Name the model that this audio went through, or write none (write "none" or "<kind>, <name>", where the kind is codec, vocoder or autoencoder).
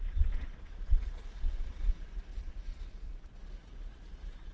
vocoder, Vocos